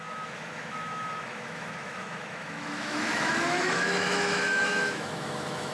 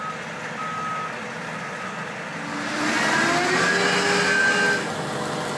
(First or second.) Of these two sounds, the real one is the second